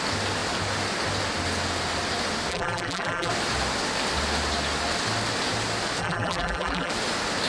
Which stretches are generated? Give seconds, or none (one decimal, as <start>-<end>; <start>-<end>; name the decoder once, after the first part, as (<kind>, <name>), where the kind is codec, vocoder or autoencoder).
2.5-3.3 (vocoder, BigVGAN v2); 6.0-6.9

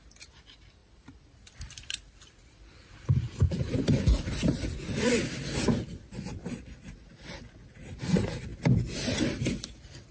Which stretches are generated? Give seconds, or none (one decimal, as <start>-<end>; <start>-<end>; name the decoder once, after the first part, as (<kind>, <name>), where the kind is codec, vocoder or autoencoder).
0.8-5.1 (vocoder, BigVGAN v2)

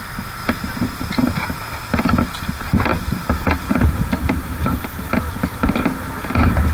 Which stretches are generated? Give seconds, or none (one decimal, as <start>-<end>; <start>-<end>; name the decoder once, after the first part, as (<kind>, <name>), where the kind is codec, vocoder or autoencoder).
2.9-4.6 (vocoder, BigVGAN v2); 5.3-6.2

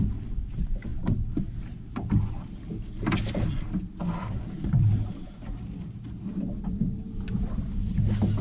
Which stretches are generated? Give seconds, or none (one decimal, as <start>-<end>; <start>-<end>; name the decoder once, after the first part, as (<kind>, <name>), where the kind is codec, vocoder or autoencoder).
none

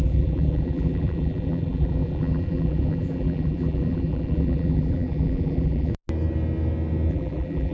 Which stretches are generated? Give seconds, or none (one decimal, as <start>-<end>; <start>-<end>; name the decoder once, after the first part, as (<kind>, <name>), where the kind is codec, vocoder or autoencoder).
0.0-5.9 (vocoder, BigVGAN v2); 7.1-7.7

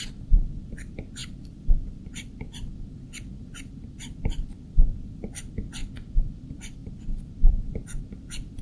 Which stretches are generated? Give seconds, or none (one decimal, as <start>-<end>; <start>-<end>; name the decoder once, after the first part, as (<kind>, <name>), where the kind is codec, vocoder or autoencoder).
0.0-5.8 (vocoder, BigVGAN v2); 6.3-8.6

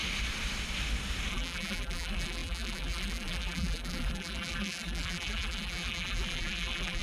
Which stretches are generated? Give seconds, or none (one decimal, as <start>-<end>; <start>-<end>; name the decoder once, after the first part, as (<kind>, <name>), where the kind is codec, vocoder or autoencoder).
1.3-7.0 (vocoder, BigVGAN v2)

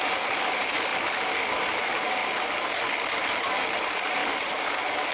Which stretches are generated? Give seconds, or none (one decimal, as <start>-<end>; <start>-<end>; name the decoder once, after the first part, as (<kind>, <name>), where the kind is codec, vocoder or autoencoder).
0.0-0.9 (vocoder, BigVGAN v2); 1.6-2.2; 3.2-4.2